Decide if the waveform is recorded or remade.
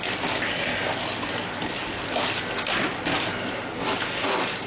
recorded